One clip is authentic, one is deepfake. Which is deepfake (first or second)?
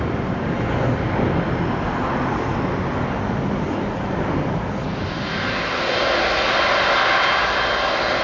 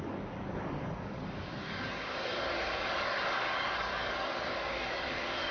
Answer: second